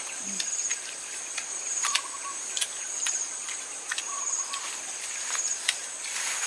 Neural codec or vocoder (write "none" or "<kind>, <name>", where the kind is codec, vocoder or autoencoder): vocoder, BigVGAN v2